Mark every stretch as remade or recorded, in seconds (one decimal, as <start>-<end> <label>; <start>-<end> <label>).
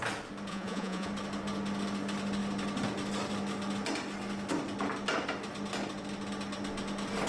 0.0-0.5 recorded; 0.5-1.1 remade; 1.1-7.3 recorded